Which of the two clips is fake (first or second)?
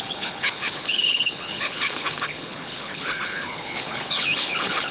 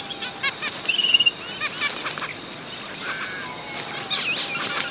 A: first